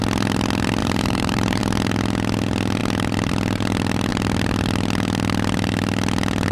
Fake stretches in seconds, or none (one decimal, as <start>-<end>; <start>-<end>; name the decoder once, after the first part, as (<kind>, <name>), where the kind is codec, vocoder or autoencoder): 0.8-1.6 (vocoder, BigVGAN v2)